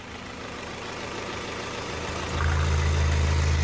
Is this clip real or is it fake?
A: real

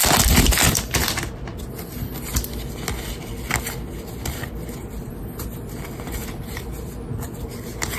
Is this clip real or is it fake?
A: real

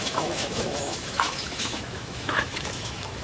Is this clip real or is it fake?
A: fake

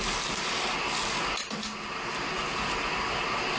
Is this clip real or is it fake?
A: real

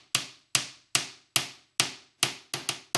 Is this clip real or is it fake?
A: real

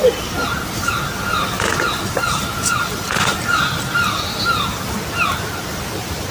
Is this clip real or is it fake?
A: real